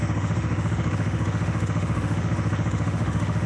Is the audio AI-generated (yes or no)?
yes